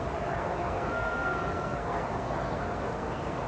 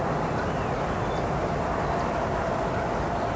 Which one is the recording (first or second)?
second